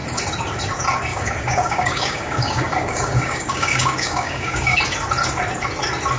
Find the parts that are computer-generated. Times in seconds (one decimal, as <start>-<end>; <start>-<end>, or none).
1.1-4.8